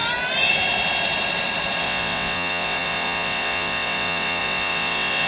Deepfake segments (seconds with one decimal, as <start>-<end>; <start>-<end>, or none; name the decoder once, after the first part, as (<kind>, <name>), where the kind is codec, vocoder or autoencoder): 1.8-5.3 (vocoder, WaveNeXt)